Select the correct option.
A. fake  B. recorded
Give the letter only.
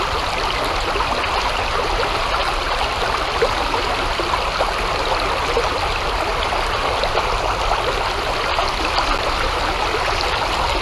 B